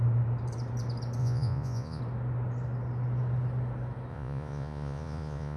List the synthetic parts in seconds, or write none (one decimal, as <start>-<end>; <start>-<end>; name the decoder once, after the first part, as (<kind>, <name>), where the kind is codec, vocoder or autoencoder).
1.2-2.0 (vocoder, Vocos); 4.1-5.6